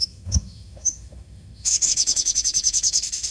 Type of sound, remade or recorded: remade